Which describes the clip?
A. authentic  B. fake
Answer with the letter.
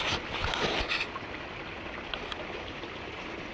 A